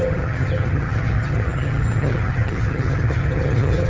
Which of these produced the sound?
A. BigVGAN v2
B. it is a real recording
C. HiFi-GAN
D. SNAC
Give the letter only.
C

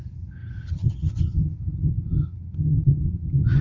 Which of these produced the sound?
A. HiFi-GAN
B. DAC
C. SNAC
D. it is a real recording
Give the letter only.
A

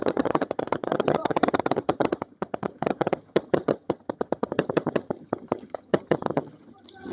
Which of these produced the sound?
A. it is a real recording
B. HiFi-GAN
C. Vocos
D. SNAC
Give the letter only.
B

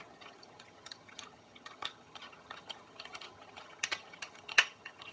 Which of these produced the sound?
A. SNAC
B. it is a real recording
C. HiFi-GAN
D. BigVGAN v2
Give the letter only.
C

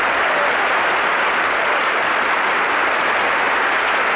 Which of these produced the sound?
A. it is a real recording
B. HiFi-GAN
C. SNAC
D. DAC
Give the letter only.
A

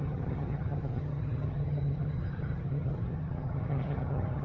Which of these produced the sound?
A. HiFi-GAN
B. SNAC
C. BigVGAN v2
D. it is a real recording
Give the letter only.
A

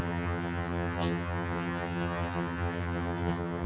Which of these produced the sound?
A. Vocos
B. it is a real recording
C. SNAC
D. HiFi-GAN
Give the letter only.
D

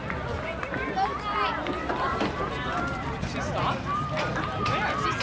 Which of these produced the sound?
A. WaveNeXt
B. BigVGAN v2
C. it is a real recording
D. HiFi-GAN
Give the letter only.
C